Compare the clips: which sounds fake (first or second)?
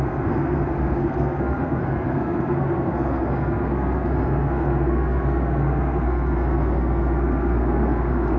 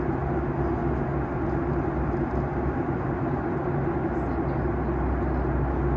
first